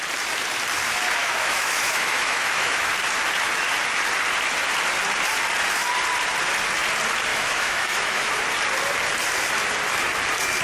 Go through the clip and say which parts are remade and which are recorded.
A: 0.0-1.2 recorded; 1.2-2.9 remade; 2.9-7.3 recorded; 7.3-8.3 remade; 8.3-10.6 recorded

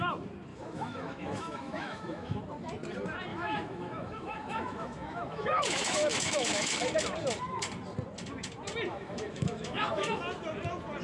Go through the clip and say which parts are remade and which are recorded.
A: 0.0-0.5 recorded; 0.5-2.4 remade; 2.4-3.3 recorded; 3.3-6.9 remade; 6.9-8.9 recorded; 8.9-10.2 remade; 10.2-11.0 recorded

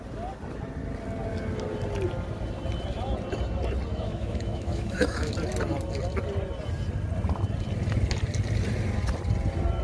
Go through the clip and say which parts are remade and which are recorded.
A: 0.0-3.9 recorded; 3.9-5.3 remade; 5.3-9.8 recorded